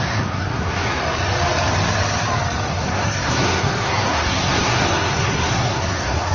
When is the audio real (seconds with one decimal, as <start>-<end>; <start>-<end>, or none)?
1.0-2.7